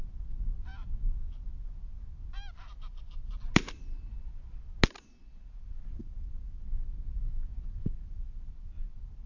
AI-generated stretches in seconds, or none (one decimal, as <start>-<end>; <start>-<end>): none